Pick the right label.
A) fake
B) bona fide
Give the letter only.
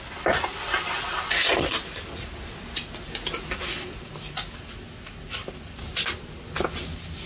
B